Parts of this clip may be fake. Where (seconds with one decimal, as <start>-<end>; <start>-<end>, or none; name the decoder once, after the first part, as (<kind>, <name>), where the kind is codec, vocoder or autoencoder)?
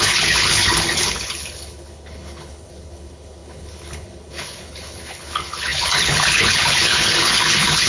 0.0-7.9 (codec, HILCodec)